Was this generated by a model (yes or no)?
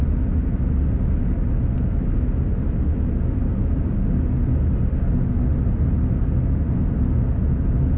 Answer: no